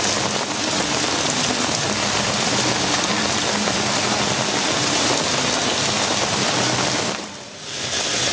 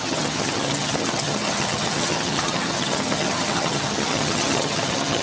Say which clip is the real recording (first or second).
first